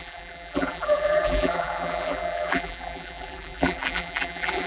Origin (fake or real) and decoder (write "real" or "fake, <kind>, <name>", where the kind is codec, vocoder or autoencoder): fake, vocoder, BigVGAN v2